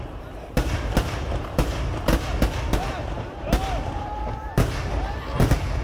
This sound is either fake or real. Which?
real